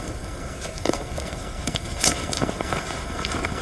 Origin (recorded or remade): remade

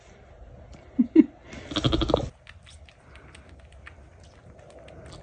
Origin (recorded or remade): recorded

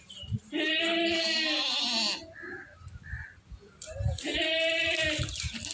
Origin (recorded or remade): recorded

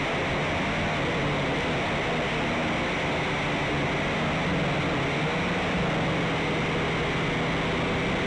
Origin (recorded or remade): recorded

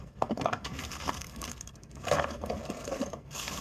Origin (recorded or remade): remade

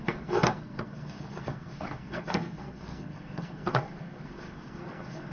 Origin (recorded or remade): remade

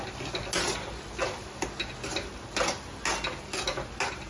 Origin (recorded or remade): recorded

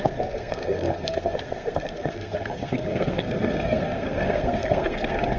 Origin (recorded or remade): remade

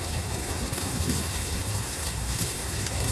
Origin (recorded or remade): remade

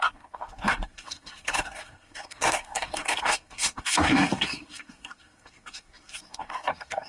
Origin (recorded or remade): remade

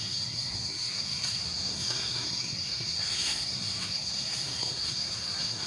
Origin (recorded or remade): remade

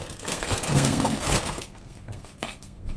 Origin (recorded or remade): remade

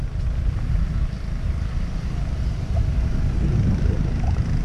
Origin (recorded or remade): recorded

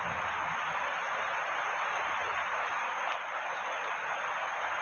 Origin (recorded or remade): recorded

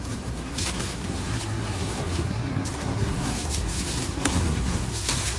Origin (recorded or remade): remade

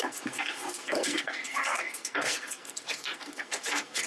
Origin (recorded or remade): remade